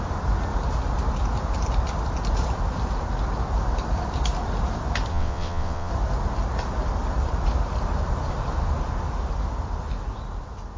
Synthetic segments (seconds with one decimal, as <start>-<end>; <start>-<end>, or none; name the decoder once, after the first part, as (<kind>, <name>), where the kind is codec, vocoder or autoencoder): 5.1-5.9 (vocoder, WaveNeXt)